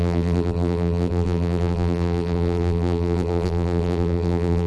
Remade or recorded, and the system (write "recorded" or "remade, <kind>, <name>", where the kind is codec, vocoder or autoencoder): remade, vocoder, BigVGAN v2